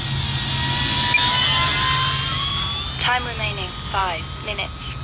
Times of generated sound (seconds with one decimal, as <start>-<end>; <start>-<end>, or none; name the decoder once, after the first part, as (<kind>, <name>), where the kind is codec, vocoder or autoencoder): none